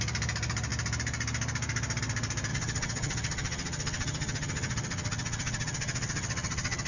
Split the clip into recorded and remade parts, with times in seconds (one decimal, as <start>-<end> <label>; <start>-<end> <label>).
0.0-2.5 recorded; 2.5-6.9 remade